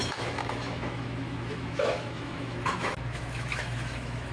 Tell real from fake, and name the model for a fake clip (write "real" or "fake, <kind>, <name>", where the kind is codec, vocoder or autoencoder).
fake, autoencoder, DAC-VAE